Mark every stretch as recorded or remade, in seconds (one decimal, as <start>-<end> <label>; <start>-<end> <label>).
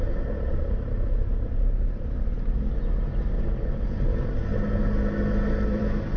0.0-6.2 recorded